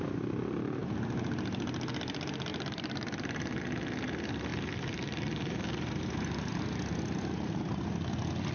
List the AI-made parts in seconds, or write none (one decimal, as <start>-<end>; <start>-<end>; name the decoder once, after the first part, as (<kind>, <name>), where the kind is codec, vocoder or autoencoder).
2.5-3.6 (vocoder, BigVGAN v2); 4.5-7.6